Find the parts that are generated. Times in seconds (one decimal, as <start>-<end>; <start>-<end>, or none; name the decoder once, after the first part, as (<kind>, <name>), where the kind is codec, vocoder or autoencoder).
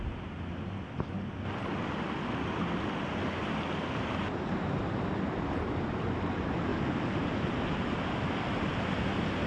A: none